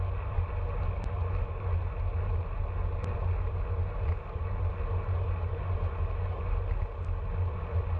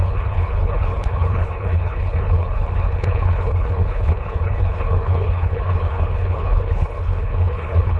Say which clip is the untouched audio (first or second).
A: first